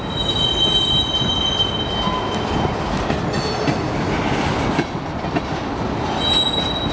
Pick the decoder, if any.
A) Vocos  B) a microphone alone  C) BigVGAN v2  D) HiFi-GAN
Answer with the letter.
B